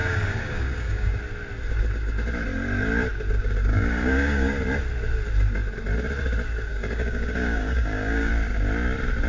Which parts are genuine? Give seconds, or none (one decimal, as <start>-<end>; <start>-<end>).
1.2-3.7; 4.5-6.7; 8.3-9.3